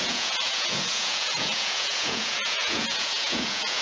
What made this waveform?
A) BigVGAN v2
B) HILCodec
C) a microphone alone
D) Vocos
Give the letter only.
D